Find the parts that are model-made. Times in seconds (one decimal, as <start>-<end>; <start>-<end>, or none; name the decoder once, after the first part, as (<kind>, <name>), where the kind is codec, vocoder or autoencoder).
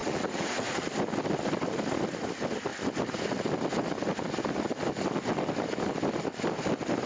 0.0-0.9 (vocoder, Vocos)